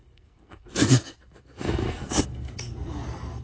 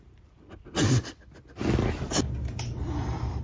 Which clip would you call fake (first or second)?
first